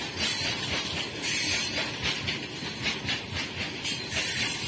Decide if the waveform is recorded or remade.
recorded